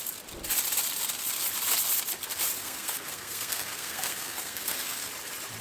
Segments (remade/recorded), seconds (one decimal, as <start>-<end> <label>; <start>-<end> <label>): 0.0-2.6 recorded; 2.6-5.1 remade; 5.1-5.6 recorded

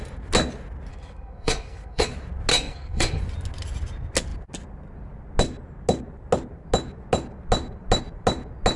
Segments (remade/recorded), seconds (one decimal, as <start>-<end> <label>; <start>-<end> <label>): 0.0-0.9 recorded; 0.9-2.1 remade; 2.1-2.5 recorded; 2.5-3.2 remade; 3.2-8.8 recorded

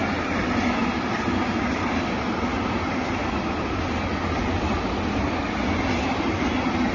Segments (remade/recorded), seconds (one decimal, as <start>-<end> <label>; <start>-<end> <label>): 0.0-6.9 recorded

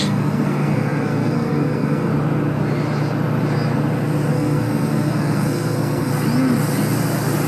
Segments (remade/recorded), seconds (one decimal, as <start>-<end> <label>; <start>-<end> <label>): 0.0-2.1 remade; 2.1-4.3 recorded; 4.3-6.1 remade; 6.1-7.5 recorded